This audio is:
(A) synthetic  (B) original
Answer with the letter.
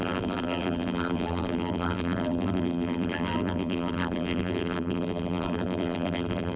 A